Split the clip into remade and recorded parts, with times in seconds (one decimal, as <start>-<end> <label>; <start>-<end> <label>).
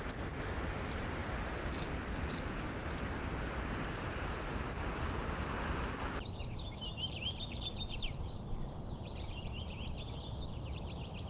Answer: 0.0-6.9 recorded; 6.9-9.7 remade; 9.7-11.3 recorded